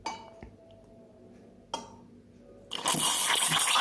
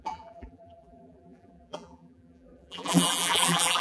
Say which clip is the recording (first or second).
first